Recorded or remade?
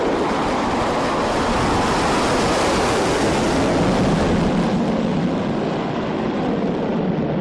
recorded